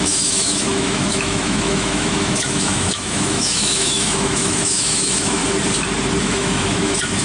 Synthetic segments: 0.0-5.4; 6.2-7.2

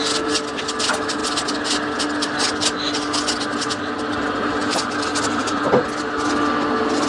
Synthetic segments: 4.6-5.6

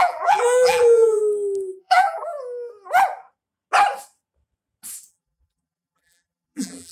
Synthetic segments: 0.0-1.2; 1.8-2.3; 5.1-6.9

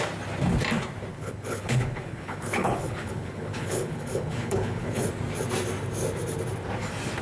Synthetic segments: 1.1-5.1

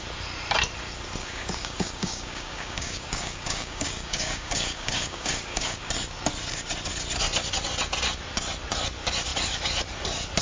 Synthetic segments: 1.2-5.9